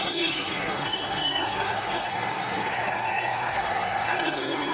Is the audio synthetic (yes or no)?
yes